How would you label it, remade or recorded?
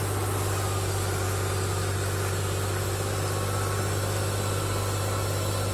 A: recorded